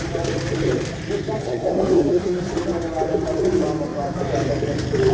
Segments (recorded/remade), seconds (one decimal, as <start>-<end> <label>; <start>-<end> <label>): 0.0-1.4 recorded; 1.4-2.4 remade; 2.4-5.1 recorded